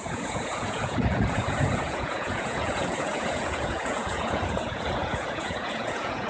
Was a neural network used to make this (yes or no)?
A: yes